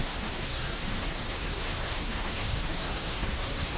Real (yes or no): no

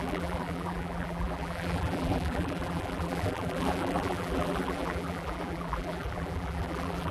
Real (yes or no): no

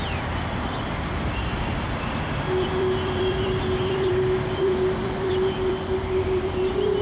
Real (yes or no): no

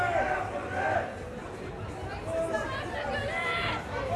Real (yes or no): yes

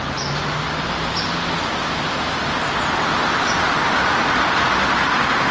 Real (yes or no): yes